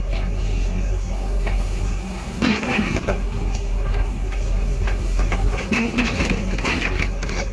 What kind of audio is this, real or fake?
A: fake